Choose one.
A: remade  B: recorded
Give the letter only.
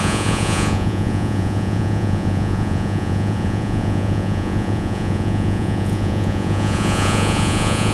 A